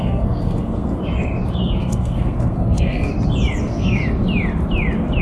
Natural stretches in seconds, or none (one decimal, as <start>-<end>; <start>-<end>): 1.0-1.8; 3.1-3.6; 4.0-5.2